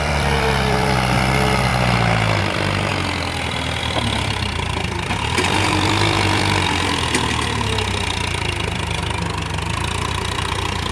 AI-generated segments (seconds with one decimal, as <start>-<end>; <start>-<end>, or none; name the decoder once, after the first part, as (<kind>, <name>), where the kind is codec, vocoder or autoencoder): 0.0-1.7 (vocoder, BigVGAN v2); 2.4-2.9; 3.8-9.0; 10.1-10.9